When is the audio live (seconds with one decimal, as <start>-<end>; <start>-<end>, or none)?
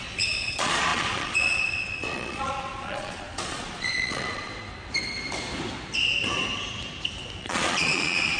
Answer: 4.5-7.4